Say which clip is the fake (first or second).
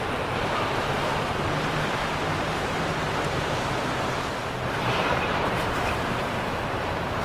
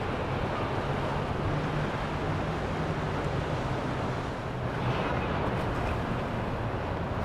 first